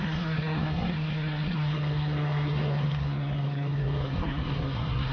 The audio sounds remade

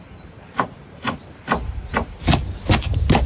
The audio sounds recorded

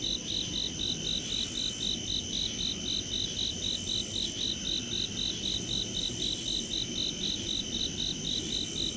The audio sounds recorded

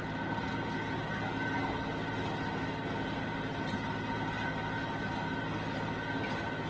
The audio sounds recorded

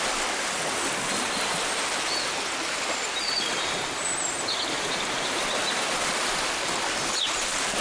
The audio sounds recorded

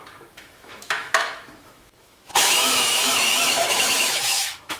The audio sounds remade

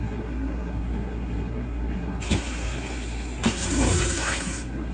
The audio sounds remade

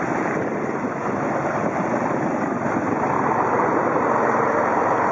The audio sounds recorded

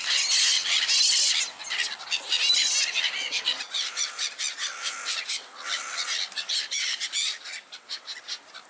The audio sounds recorded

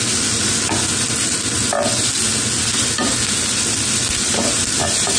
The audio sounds recorded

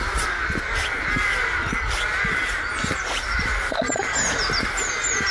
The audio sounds recorded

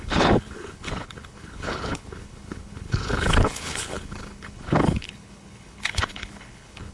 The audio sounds remade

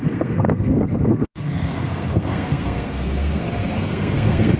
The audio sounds remade